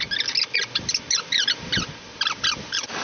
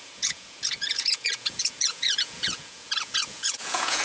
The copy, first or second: second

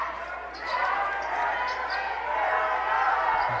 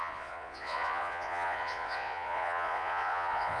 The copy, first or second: second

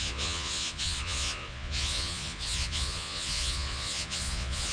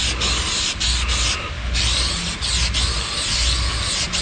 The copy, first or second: first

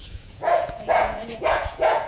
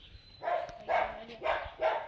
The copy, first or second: first